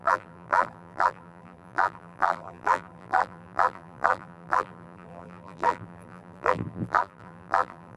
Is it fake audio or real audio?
fake